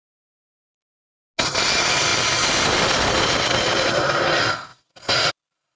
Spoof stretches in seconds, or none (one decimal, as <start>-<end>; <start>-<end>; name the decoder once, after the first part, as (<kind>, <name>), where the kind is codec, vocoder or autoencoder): none